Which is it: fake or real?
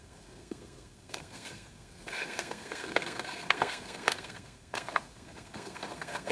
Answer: fake